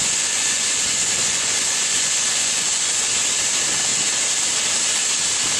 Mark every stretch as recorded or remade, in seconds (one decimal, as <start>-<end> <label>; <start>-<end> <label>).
0.0-3.1 remade; 3.1-5.6 recorded